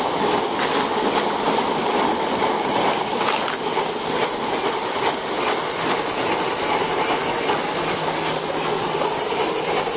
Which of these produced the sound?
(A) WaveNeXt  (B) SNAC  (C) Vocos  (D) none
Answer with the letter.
D